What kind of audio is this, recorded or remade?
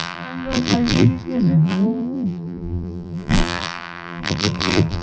remade